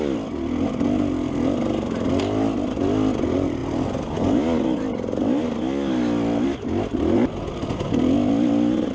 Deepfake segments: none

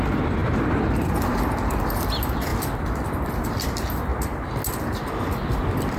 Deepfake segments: 0.0-4.1 (vocoder, BigVGAN v2); 5.6-6.0

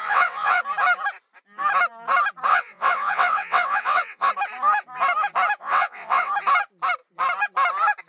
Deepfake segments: 0.0-0.6 (vocoder, WaveNeXt); 2.5-4.3; 5.6-6.3

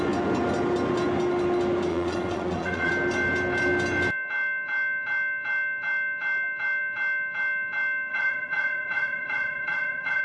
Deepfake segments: 1.9-2.9 (vocoder, Vocos); 8.1-10.2

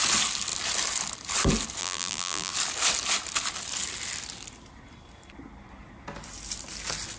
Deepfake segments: 1.8-2.5 (vocoder, BigVGAN v2)

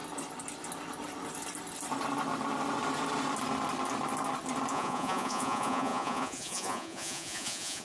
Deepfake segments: 4.7-7.8 (vocoder, Vocos)

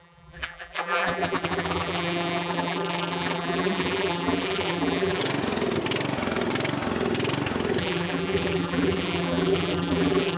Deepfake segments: 0.0-5.2 (vocoder, BigVGAN v2); 7.8-10.4